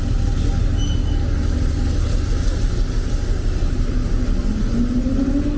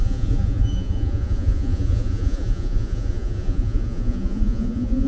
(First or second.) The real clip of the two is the first